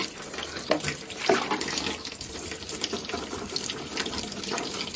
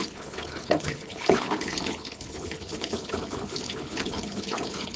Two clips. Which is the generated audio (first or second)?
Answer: second